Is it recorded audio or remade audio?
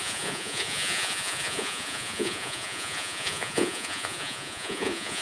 remade